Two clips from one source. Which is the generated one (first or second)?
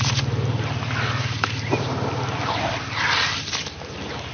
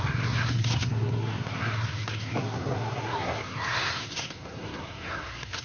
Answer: second